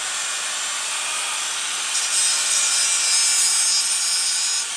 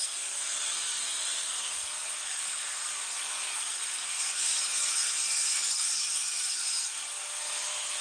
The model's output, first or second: second